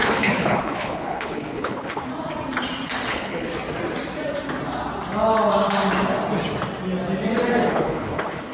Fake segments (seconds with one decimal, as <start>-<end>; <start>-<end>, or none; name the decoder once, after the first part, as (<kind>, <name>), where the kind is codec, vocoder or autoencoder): 0.0-2.1 (codec, HILCodec); 3.1-3.5; 7.7-8.5